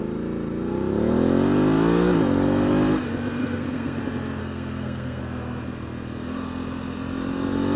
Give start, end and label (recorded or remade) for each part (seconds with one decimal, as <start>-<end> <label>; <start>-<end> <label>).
0.0-3.4 recorded; 3.4-4.0 remade; 4.0-4.4 recorded; 4.4-5.2 remade; 5.2-7.8 recorded